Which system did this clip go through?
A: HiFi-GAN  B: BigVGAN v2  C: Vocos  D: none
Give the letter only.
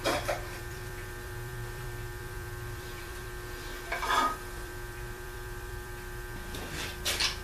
B